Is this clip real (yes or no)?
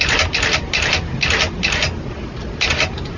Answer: yes